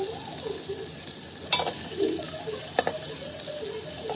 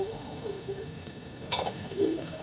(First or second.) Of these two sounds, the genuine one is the first